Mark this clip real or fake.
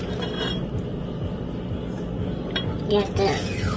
real